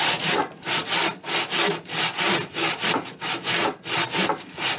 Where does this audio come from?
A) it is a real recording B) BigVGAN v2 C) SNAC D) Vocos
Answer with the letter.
A